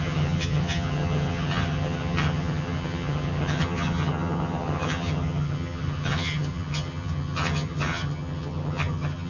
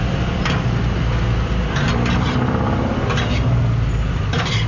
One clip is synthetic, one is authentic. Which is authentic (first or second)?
second